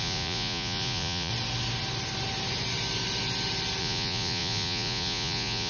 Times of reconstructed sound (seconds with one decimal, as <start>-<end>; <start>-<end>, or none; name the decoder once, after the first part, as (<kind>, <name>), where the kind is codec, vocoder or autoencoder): 0.0-1.3 (vocoder, Vocos); 3.8-5.7